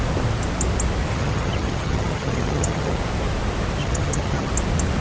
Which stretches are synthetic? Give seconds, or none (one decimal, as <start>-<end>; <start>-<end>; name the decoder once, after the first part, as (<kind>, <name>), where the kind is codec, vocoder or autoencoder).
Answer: 1.1-3.0 (vocoder, HiFi-GAN); 3.8-4.5